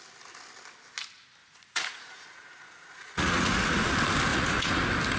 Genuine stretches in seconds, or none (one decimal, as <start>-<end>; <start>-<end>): 0.0-1.4; 3.9-4.3; 4.8-5.2